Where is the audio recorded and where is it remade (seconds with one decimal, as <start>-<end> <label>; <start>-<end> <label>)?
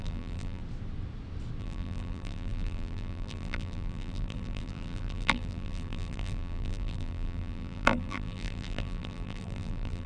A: 0.0-0.6 remade; 0.6-1.6 recorded; 1.6-10.1 remade